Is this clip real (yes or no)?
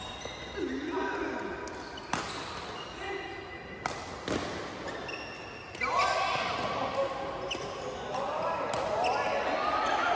yes